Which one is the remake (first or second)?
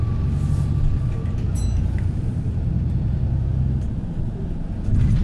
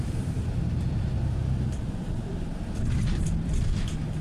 second